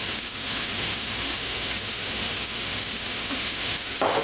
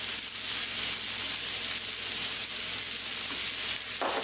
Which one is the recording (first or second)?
second